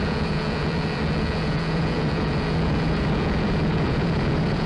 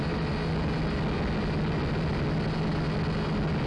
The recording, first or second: second